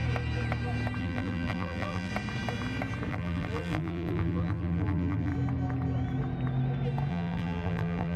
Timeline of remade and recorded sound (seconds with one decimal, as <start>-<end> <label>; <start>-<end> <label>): 0.0-1.0 recorded; 1.0-2.1 remade; 2.1-3.1 recorded; 3.1-5.3 remade; 5.3-7.1 recorded; 7.1-8.2 remade